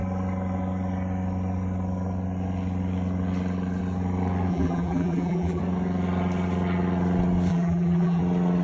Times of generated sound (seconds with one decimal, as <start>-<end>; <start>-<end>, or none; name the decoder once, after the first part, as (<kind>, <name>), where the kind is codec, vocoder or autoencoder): 4.5-5.6 (vocoder, BigVGAN v2); 7.5-8.2